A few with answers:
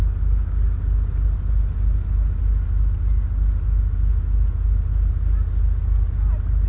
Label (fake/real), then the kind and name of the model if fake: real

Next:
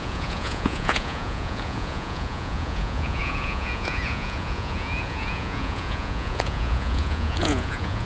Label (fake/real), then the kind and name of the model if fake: fake, vocoder, Vocos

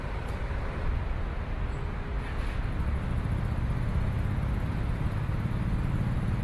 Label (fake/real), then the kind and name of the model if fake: real